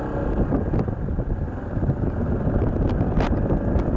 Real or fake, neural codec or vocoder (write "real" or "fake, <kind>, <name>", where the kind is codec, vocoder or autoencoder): real